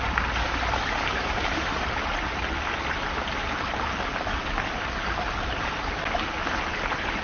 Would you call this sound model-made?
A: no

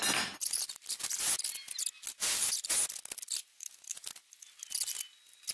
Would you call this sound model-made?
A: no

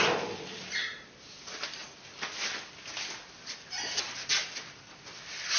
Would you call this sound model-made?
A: no